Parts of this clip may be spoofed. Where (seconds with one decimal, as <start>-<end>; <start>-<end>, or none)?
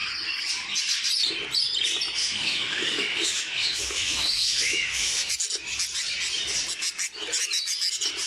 2.2-5.3